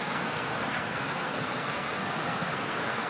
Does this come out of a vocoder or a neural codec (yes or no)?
yes